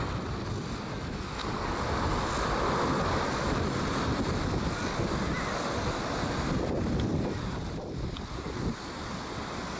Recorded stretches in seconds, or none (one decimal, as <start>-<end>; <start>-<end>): 0.0-9.8